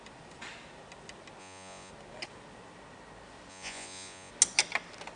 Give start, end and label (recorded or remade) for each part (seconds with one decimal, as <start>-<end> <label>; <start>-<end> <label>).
0.0-1.4 recorded; 1.4-1.9 remade; 1.9-3.5 recorded; 3.5-4.3 remade; 4.3-5.2 recorded